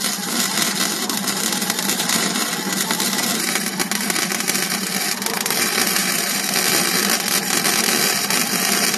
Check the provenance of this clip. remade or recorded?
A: remade